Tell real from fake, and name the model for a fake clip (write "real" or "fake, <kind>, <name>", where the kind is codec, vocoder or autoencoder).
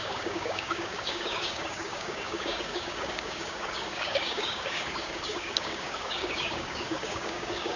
fake, codec, DAC